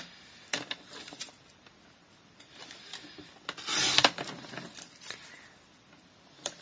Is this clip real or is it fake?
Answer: fake